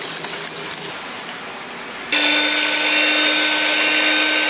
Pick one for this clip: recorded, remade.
recorded